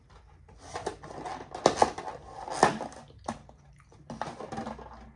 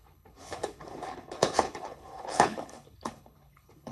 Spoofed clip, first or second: second